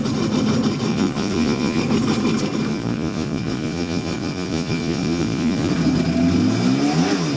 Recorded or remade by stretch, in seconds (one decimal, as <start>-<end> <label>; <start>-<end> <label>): 0.0-0.9 recorded; 0.9-1.8 remade; 1.8-2.7 recorded; 2.7-5.7 remade; 5.7-7.4 recorded